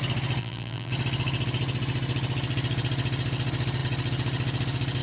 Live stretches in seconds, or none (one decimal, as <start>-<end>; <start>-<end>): 0.0-0.4; 0.9-5.0

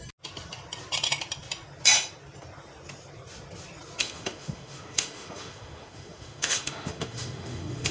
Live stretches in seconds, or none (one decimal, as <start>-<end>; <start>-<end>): 0.0-4.0

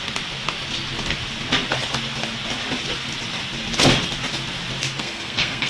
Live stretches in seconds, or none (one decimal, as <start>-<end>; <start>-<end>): 0.0-5.0